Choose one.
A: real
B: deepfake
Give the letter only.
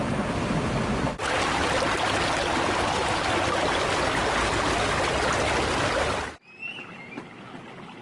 A